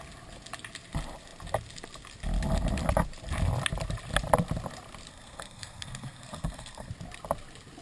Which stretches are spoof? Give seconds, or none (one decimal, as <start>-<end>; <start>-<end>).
5.1-6.9